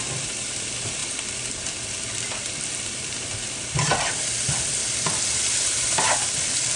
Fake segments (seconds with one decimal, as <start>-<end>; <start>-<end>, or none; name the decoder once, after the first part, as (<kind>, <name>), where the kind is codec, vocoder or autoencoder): 0.0-6.8 (vocoder, BigVGAN v2)